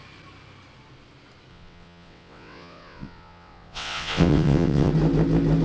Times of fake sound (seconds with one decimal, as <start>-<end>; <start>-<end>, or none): 1.5-4.9